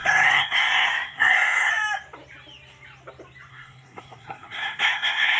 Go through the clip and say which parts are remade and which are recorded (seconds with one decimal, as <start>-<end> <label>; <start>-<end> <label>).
0.0-1.7 remade; 1.7-3.5 recorded; 3.5-5.4 remade